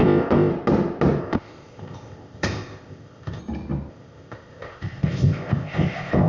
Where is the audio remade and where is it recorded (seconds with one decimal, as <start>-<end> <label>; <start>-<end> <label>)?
0.0-0.5 remade; 0.5-1.2 recorded; 1.2-3.4 remade; 3.4-3.9 recorded; 3.9-6.3 remade